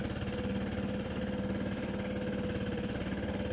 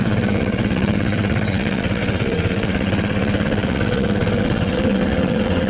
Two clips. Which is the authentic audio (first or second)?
first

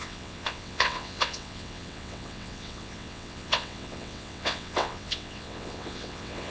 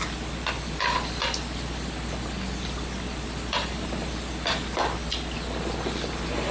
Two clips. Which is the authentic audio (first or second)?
second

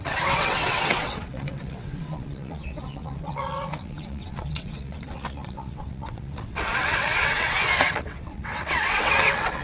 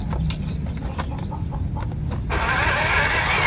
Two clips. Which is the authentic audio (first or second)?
second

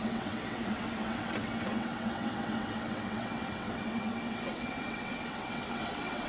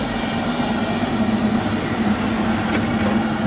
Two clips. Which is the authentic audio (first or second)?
second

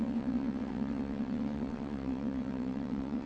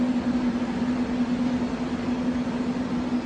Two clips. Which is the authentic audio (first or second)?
second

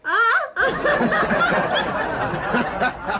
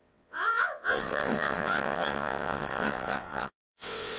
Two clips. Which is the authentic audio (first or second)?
first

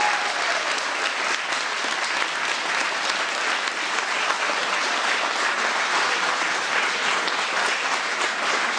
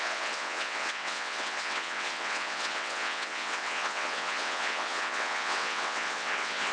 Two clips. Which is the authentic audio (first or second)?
first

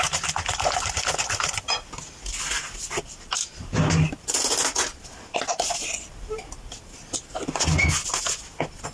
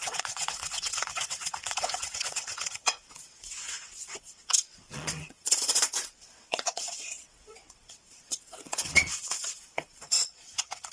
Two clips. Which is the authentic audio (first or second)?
first